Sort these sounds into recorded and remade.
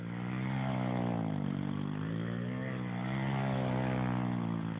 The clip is recorded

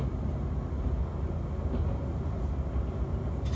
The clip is recorded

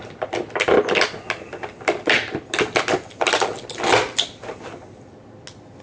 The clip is recorded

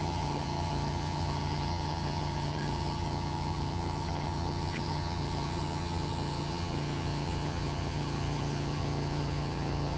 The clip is remade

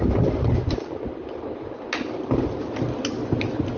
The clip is recorded